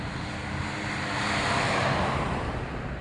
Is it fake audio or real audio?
real